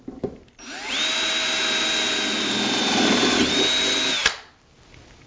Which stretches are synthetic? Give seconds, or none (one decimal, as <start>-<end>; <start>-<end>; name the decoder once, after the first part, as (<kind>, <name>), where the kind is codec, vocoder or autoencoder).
none